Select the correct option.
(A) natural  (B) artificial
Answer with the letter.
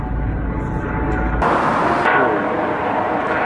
A